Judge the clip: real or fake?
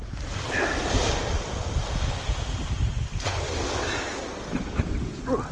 real